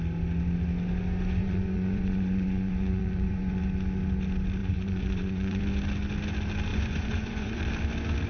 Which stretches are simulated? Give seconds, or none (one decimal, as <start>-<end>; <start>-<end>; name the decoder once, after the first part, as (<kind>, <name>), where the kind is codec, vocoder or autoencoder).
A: 1.4-3.6 (vocoder, Vocos); 4.6-5.6; 6.7-7.6